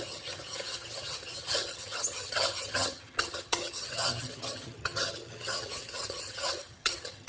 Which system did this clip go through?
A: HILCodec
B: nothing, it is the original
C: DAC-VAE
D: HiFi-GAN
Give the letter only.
D